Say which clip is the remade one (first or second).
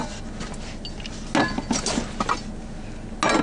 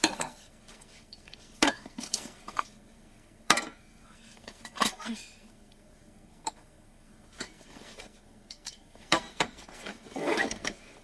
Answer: second